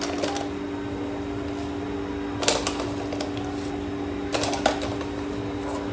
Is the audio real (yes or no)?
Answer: yes